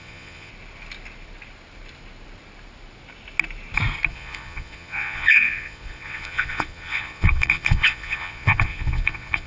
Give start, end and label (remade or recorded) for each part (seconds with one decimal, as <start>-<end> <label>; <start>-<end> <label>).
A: 0.0-0.5 remade; 0.5-4.1 recorded; 4.1-9.5 remade